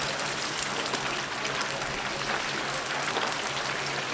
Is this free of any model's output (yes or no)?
yes